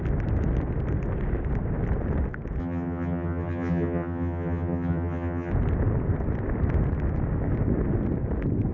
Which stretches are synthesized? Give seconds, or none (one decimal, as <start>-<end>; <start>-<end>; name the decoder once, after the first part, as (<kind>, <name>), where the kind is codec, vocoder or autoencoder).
2.6-5.5 (vocoder, HiFi-GAN)